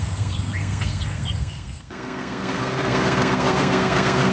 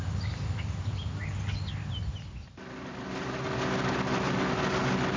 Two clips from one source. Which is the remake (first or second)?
first